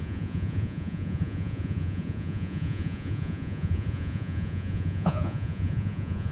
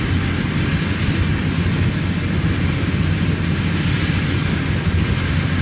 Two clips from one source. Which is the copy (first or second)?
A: first